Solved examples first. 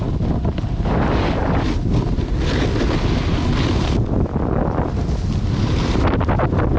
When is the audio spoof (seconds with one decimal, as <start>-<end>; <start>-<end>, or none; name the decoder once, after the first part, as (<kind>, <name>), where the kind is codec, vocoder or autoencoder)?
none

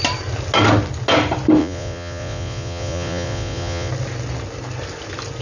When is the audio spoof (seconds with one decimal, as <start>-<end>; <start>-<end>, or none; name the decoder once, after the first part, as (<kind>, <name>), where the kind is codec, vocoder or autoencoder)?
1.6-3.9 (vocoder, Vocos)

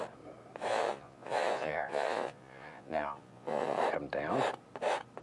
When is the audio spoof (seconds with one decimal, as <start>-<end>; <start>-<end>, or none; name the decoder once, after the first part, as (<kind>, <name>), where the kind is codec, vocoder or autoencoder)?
0.7-3.8 (vocoder, Vocos)

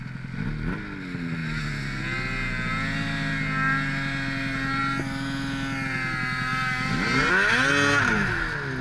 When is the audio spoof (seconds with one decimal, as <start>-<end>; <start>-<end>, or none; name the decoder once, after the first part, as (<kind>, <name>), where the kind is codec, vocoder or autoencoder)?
none

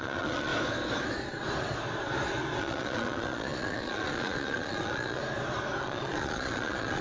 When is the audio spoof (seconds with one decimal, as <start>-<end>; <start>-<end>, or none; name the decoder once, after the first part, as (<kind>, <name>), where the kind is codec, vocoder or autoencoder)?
0.0-0.5 (vocoder, Vocos); 2.6-5.2; 5.8-7.0

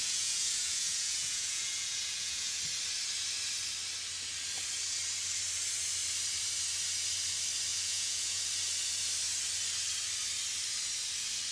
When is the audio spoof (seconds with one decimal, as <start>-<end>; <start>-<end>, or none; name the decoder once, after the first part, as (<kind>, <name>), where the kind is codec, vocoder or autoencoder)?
0.0-2.6 (vocoder, Vocos); 7.7-8.4

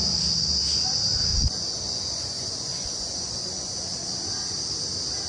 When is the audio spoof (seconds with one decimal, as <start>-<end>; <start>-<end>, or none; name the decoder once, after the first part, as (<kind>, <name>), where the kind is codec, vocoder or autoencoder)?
1.3-3.8 (vocoder, Vocos)

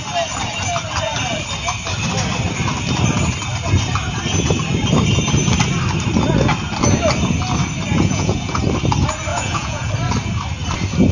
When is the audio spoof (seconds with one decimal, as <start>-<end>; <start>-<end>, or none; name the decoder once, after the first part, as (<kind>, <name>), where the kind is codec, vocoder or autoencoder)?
7.9-8.6 (vocoder, Vocos); 9.3-9.9